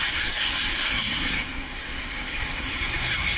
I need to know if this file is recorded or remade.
remade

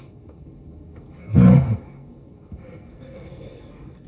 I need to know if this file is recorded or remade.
remade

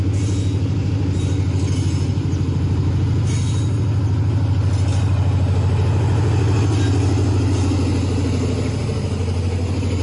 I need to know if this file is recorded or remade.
recorded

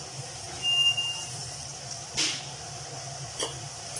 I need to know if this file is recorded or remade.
recorded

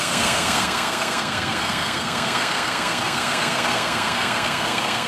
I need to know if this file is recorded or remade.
remade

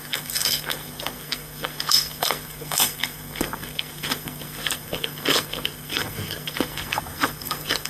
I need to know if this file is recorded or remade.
remade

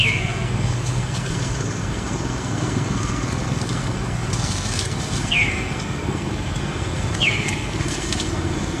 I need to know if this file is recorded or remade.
remade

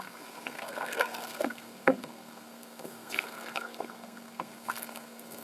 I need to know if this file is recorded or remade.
remade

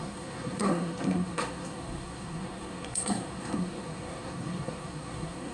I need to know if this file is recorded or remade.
remade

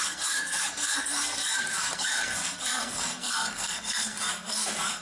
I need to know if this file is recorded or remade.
remade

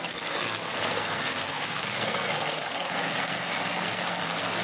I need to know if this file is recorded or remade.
remade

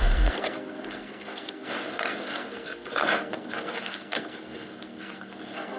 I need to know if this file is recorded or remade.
remade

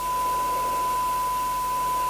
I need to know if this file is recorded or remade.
recorded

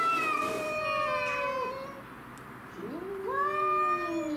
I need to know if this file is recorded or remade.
recorded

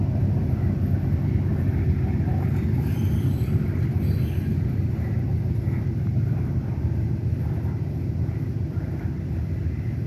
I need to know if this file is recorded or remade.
recorded